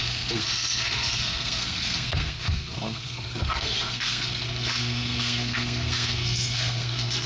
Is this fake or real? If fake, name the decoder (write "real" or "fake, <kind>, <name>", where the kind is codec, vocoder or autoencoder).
fake, codec, SNAC